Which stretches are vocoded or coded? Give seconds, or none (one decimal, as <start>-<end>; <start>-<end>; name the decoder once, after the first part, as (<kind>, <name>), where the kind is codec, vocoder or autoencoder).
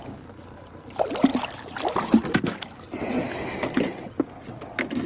none